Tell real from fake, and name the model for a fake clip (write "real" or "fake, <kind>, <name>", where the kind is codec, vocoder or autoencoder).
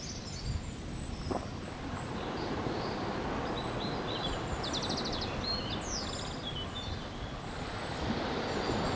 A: real